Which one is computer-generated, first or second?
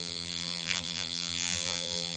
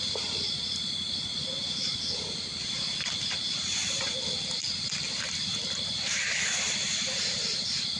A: first